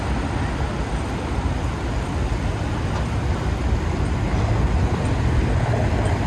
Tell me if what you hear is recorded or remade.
recorded